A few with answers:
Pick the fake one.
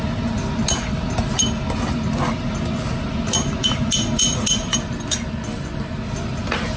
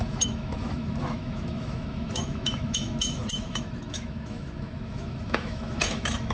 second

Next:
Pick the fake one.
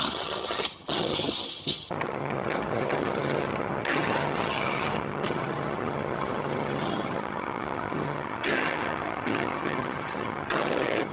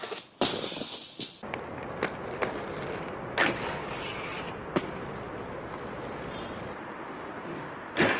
first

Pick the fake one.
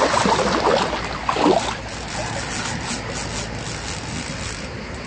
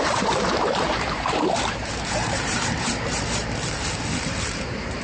second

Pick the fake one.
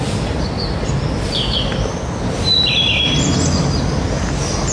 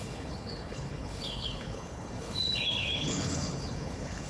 second